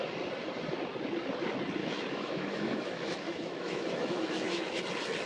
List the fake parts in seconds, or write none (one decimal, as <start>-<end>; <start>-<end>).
1.8-4.8